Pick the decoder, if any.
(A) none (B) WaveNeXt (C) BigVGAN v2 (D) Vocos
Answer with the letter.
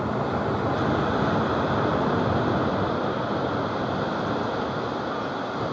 A